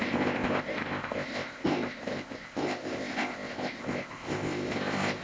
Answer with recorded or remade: remade